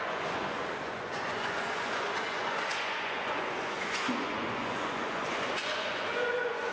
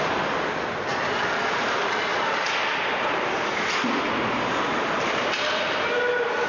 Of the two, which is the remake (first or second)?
first